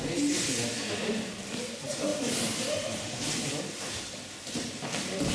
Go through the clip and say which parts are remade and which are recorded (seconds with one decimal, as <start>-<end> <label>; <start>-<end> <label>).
0.0-2.1 recorded; 2.1-5.3 remade